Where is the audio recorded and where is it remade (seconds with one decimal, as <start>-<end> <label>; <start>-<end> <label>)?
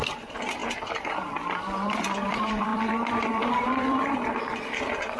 0.0-5.2 remade